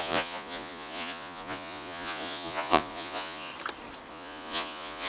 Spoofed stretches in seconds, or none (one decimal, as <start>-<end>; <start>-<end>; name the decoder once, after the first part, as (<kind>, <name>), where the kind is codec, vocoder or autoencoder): 0.0-3.5 (vocoder, Vocos); 4.1-5.1